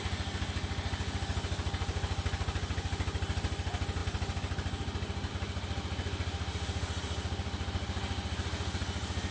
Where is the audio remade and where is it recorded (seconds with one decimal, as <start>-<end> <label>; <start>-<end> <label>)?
0.0-9.3 recorded